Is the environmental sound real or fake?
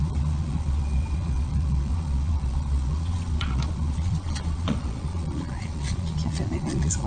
fake